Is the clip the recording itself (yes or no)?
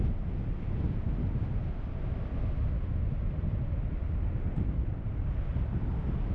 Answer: yes